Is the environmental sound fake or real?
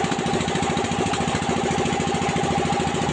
real